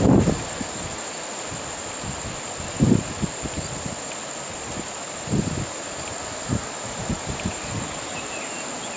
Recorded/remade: recorded